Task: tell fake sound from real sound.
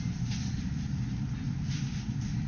real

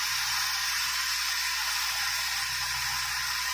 real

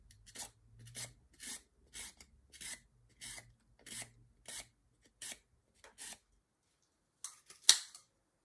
real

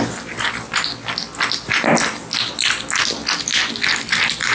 real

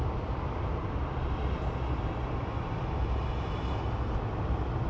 real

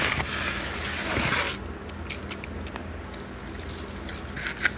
real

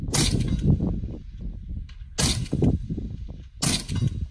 real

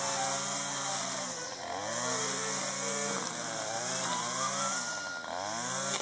real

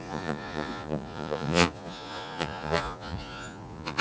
fake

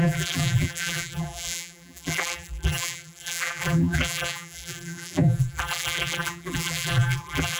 fake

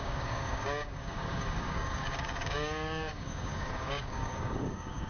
fake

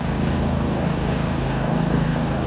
fake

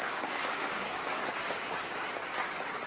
fake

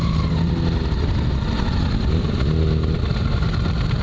real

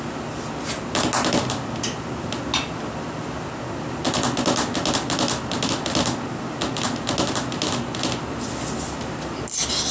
real